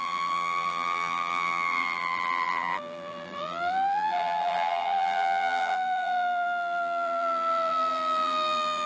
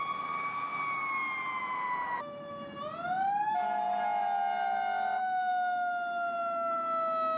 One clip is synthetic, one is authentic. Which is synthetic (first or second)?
first